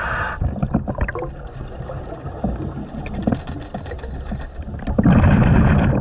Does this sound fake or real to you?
real